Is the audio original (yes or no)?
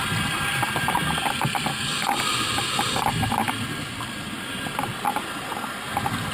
yes